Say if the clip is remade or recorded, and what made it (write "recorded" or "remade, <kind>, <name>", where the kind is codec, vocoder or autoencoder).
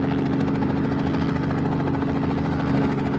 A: recorded